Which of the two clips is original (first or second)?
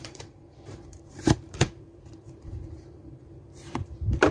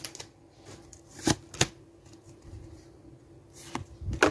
second